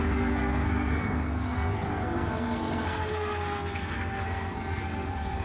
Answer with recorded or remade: remade